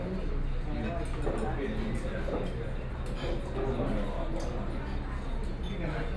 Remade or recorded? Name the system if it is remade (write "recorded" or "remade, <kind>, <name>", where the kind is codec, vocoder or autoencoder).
recorded